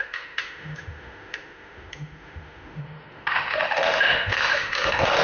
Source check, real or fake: fake